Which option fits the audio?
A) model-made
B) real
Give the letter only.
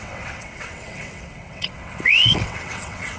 A